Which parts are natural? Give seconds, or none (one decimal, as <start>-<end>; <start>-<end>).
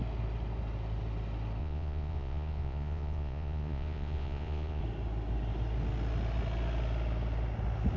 0.0-1.6; 4.8-8.0